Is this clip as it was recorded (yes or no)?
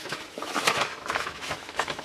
no